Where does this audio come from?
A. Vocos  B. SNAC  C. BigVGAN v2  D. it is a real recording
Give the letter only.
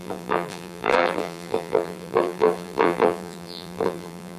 C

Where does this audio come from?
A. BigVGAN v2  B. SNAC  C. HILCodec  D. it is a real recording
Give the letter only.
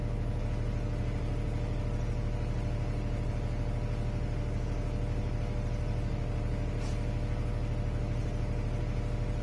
D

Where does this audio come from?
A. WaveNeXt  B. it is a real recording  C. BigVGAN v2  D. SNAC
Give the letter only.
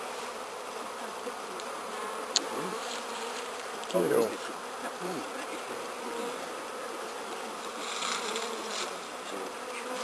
C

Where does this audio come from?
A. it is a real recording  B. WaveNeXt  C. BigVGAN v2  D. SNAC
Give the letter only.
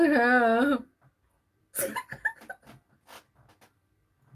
A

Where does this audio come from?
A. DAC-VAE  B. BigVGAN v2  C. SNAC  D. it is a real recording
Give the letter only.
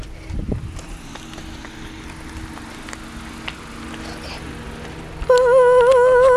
D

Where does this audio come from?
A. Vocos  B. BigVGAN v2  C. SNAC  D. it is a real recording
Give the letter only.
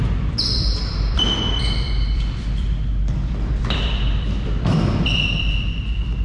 B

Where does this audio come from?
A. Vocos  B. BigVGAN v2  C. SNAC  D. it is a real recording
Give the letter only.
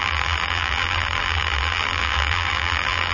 B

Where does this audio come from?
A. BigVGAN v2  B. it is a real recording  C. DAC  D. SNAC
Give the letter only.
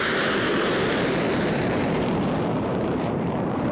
A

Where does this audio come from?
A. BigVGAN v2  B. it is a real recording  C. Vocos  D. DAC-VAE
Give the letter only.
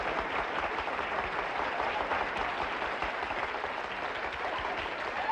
B